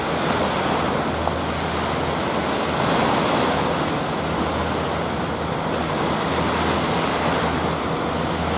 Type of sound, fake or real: real